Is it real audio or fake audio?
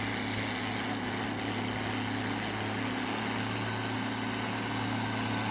real